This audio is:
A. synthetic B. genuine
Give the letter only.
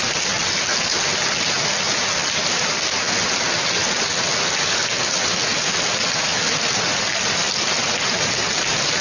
B